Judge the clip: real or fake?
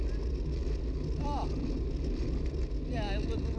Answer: real